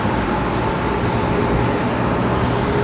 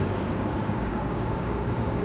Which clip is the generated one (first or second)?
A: second